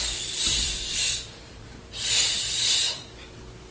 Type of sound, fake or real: fake